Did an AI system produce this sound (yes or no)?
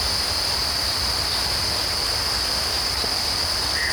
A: no